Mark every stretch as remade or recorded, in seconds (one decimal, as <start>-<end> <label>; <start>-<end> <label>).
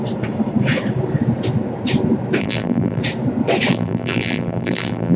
0.0-2.4 recorded; 2.4-3.0 remade; 3.0-3.7 recorded; 3.7-5.2 remade